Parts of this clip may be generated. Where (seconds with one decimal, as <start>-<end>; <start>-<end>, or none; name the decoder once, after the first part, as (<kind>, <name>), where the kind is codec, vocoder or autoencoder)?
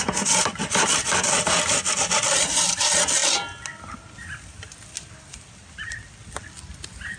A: none